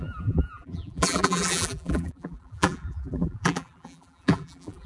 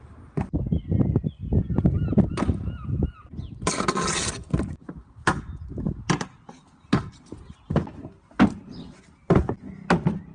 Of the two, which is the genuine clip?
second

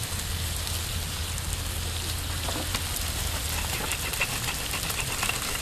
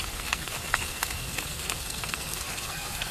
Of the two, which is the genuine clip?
first